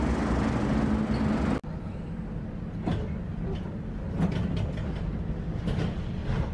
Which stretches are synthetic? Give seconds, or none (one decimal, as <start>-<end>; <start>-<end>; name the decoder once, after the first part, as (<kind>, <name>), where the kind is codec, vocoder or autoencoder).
none